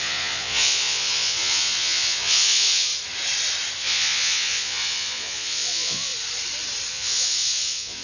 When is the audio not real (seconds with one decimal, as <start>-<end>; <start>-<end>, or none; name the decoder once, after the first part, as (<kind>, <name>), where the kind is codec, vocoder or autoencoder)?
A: 0.0-2.9 (vocoder, Vocos); 3.8-6.1; 6.9-8.0